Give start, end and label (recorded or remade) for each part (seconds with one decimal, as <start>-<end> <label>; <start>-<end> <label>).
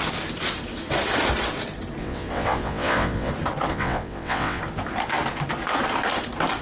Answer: 0.0-2.0 recorded; 2.0-3.3 remade; 3.3-3.7 recorded; 3.7-4.6 remade; 4.6-6.6 recorded